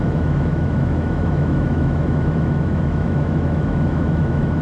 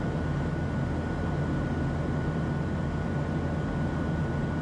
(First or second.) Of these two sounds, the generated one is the first